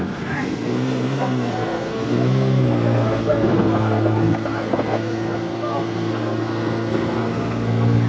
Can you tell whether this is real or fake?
fake